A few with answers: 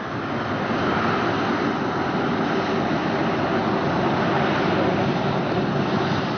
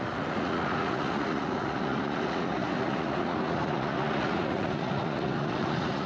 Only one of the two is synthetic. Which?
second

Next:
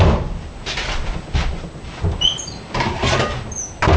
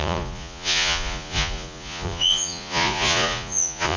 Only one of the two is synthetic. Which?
second